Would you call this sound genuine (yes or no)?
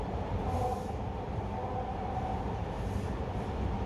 yes